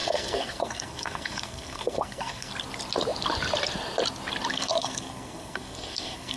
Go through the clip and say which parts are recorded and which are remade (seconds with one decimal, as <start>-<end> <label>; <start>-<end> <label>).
0.0-2.5 remade; 2.5-4.5 recorded; 4.5-6.4 remade